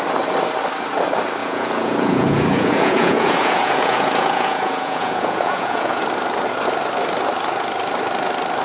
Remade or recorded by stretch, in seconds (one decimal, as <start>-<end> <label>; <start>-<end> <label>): 0.0-1.4 recorded; 1.4-6.0 remade; 6.0-8.6 recorded